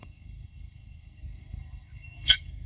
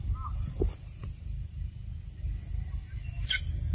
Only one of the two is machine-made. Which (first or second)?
first